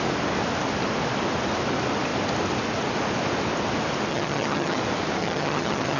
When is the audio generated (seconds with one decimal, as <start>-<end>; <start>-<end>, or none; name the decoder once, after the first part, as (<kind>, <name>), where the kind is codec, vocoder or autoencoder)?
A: 4.1-4.8 (vocoder, HiFi-GAN); 5.2-6.0

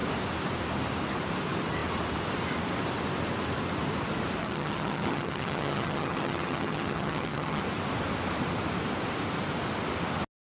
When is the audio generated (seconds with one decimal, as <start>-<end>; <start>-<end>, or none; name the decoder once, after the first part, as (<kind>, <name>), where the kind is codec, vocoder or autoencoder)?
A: 4.4-7.6 (vocoder, HiFi-GAN)

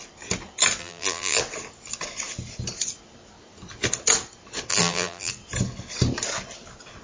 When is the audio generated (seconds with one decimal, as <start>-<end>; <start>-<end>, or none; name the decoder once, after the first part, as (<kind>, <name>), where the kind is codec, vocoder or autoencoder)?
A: 0.8-1.4 (vocoder, BigVGAN v2); 4.7-5.3

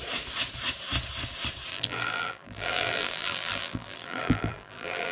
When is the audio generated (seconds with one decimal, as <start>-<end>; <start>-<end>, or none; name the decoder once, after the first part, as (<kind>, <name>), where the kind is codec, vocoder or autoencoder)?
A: 1.7-5.1 (vocoder, BigVGAN v2)